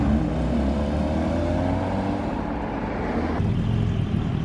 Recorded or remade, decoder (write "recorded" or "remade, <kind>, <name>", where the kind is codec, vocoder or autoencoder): recorded